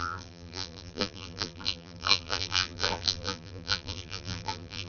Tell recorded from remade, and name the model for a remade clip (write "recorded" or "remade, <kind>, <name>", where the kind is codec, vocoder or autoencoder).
remade, vocoder, BigVGAN v2